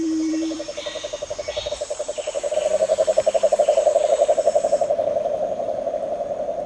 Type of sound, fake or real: fake